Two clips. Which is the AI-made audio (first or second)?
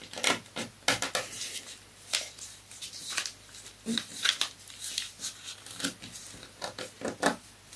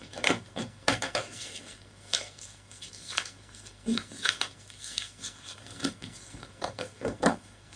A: second